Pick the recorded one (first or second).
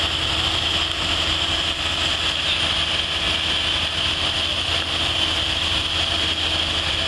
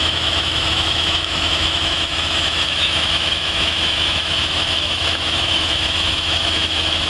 first